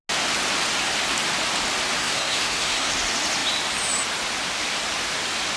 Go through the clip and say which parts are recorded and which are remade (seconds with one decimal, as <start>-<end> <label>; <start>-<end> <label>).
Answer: 0.0-2.0 recorded; 2.0-2.9 remade; 2.9-5.6 recorded